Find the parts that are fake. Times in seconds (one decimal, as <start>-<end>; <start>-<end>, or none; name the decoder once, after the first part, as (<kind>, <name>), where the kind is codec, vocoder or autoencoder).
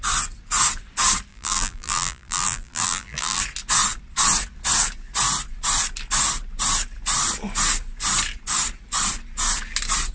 1.3-3.4 (vocoder, BigVGAN v2)